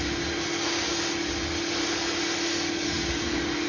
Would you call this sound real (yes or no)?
yes